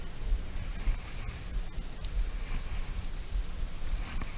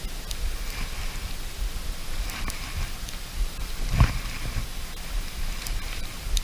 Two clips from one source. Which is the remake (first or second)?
second